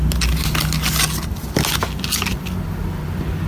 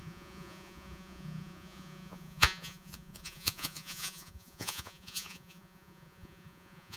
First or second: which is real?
first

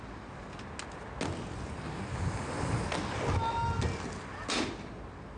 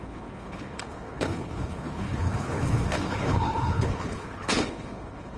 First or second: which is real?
first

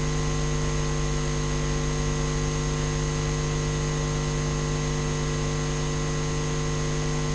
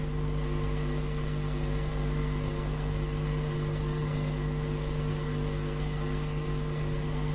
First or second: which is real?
first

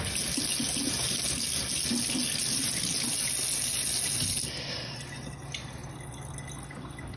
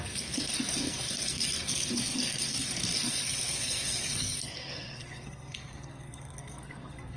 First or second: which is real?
first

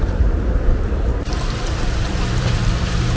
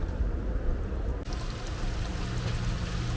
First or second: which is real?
second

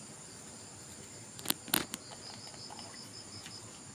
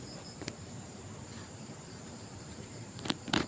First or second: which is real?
first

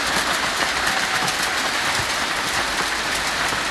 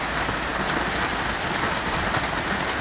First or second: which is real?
second